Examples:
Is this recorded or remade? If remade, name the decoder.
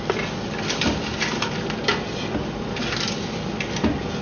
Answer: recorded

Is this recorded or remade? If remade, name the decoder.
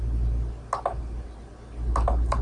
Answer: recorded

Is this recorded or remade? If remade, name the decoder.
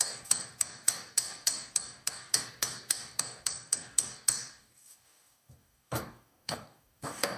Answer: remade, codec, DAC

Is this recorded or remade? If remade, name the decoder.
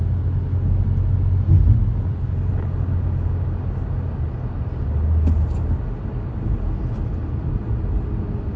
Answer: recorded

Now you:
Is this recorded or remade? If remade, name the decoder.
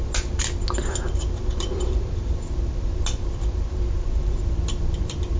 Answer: recorded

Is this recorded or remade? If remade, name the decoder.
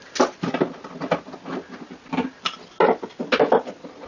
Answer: recorded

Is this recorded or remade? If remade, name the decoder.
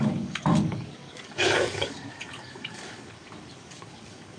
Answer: remade, codec, DAC